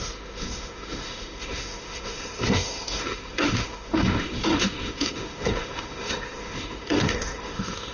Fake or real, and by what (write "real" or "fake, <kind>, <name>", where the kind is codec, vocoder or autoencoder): fake, autoencoder, DAC-VAE